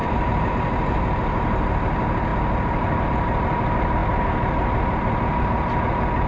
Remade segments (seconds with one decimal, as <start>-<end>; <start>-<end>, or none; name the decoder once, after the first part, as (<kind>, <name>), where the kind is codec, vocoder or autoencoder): 0.0-0.5 (vocoder, BigVGAN v2); 2.3-3.0